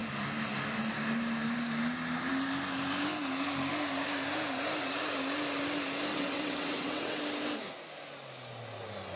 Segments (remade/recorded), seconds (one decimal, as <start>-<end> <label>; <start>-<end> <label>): 0.0-6.1 recorded; 6.1-7.2 remade; 7.2-9.2 recorded